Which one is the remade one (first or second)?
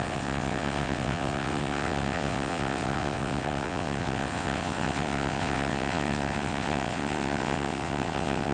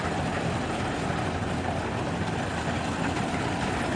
first